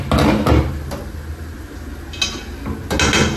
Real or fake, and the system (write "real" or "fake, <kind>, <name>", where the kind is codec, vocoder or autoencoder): real